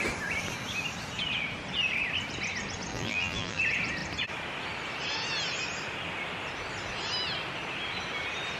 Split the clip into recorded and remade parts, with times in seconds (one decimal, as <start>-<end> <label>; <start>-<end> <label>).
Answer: 0.0-2.9 recorded; 2.9-3.6 remade; 3.6-8.6 recorded